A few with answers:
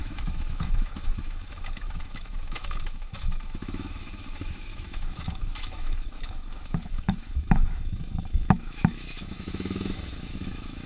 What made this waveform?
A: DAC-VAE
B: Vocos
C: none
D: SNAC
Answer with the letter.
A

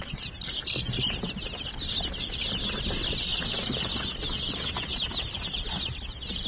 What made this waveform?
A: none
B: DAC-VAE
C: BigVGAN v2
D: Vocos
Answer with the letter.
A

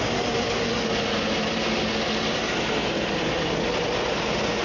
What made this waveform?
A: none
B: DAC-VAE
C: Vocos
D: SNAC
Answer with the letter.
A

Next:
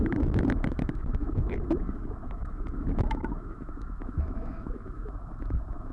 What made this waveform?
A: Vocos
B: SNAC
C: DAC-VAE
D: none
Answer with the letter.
C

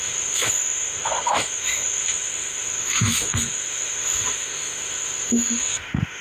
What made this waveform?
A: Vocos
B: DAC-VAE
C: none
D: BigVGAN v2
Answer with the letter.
B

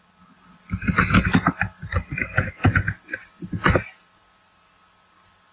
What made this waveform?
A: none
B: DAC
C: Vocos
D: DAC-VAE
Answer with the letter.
A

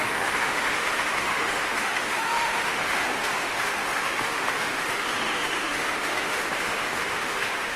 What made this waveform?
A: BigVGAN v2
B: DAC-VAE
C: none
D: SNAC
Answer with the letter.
B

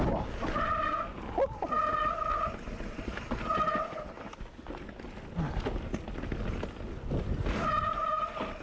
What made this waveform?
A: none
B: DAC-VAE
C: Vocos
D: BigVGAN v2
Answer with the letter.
A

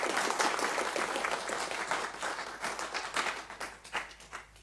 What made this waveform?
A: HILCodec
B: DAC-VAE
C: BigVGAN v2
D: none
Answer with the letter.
D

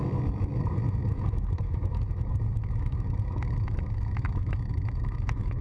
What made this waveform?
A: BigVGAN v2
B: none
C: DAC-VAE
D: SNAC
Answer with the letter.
C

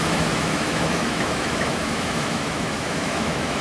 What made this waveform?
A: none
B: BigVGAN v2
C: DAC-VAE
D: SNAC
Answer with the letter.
C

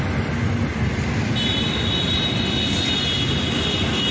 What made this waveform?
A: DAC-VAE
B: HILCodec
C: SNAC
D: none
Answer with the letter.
D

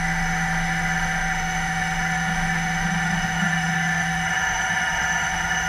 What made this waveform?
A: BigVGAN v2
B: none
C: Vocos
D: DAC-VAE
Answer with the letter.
D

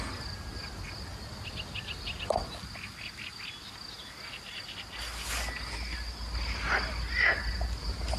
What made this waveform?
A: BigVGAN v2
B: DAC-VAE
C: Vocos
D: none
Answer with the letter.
D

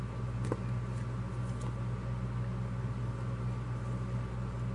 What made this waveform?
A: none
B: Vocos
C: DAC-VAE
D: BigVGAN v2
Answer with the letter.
A